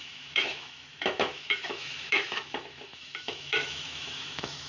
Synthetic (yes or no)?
yes